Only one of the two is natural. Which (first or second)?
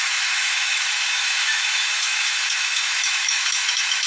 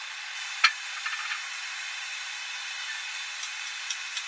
second